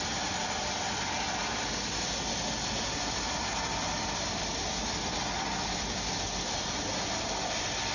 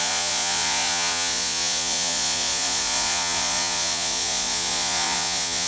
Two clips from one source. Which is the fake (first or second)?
second